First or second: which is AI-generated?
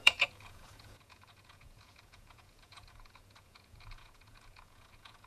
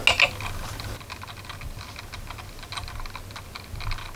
first